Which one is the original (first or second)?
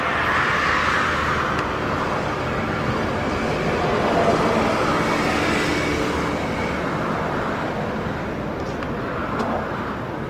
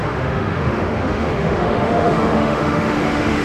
first